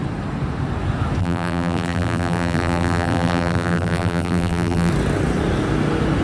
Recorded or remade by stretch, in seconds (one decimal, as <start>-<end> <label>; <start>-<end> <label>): 0.0-1.2 recorded; 1.2-4.9 remade; 4.9-6.2 recorded